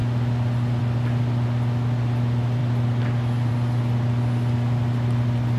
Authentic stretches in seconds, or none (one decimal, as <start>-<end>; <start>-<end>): 0.0-5.6